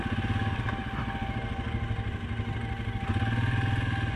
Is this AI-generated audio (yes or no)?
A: no